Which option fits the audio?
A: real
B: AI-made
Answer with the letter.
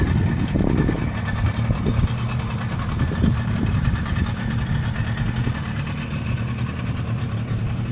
A